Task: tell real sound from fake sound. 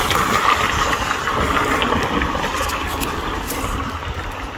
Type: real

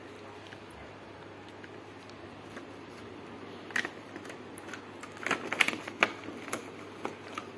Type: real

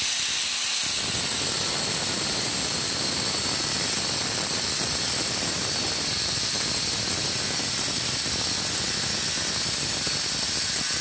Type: real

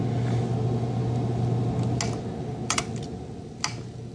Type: real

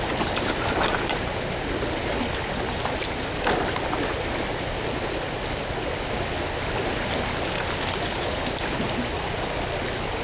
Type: real